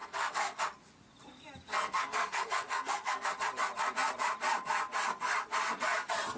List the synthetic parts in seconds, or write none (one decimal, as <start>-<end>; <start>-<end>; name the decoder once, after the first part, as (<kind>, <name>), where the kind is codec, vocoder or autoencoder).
0.0-0.6 (codec, SNAC); 1.7-3.3